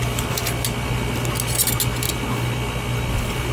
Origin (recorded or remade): recorded